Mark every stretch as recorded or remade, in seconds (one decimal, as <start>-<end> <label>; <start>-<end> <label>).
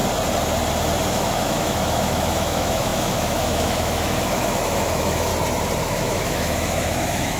0.0-1.1 recorded; 1.1-5.3 remade; 5.3-5.8 recorded; 5.8-7.4 remade